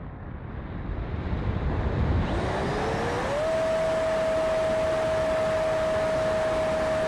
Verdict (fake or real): real